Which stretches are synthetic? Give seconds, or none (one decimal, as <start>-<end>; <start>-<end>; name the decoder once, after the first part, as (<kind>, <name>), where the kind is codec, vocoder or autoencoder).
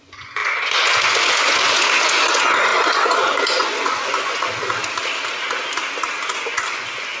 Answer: 0.0-4.5 (vocoder, Vocos); 6.3-7.2